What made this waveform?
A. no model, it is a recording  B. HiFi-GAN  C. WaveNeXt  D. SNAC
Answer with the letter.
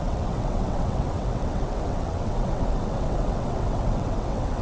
C